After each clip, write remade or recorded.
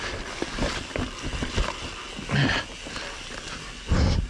recorded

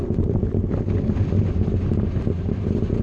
recorded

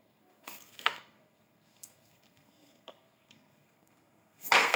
remade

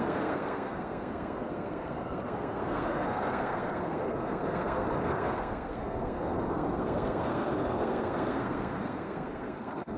remade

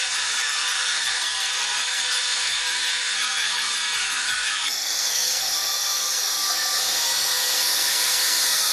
remade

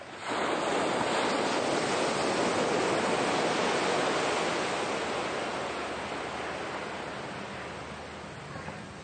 recorded